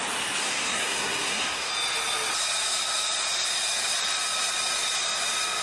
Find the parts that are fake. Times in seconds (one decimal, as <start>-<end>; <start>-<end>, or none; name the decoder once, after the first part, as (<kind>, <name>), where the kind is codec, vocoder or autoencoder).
0.4-1.7 (codec, SNAC)